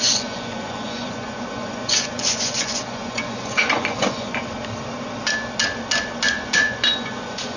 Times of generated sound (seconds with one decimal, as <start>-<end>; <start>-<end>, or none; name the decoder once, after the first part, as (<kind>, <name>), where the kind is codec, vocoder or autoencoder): 0.0-4.4 (vocoder, Vocos); 6.3-7.6